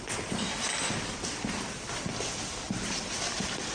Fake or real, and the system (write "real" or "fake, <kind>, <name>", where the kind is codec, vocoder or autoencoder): fake, vocoder, BigVGAN v2